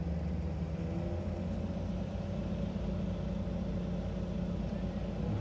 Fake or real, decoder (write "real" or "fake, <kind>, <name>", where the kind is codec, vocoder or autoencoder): real